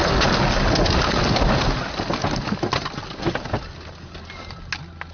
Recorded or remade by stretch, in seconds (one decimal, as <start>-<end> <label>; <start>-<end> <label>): 0.0-5.1 recorded